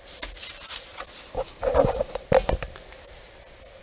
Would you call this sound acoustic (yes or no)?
yes